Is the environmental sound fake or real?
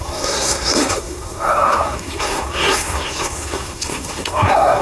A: fake